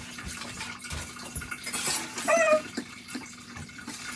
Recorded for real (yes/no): no